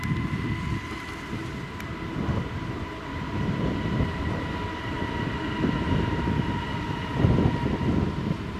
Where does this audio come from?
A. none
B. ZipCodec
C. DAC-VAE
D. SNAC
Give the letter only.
A